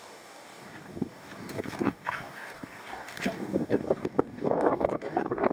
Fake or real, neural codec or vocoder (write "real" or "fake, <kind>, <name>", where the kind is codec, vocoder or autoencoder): fake, codec, DAC